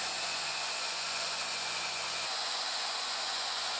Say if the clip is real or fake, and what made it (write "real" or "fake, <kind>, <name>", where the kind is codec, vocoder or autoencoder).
fake, vocoder, Vocos